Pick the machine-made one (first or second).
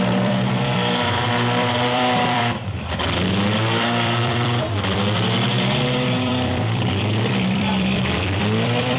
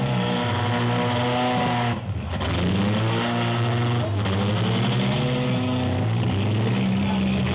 first